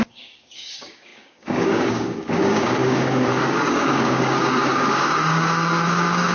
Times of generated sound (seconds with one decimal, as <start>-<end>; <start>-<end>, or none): 0.0-6.3